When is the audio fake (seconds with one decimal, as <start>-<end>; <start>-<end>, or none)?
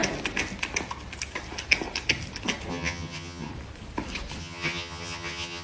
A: 2.7-3.5; 4.4-5.6